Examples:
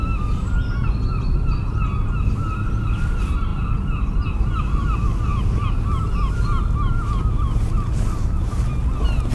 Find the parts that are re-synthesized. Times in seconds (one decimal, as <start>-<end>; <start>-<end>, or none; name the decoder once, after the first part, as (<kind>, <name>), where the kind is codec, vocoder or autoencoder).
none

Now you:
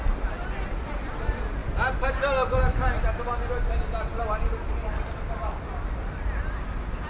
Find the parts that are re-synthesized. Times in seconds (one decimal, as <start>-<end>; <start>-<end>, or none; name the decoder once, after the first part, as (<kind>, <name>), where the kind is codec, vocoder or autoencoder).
none

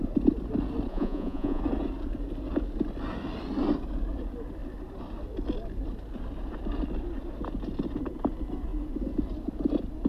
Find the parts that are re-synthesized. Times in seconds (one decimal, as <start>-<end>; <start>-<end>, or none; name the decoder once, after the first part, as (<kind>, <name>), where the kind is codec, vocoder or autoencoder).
0.9-1.6 (vocoder, Vocos)